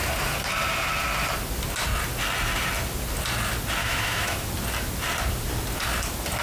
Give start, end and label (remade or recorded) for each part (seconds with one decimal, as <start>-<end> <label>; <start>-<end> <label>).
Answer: 0.0-3.8 recorded; 3.8-4.5 remade; 4.5-6.4 recorded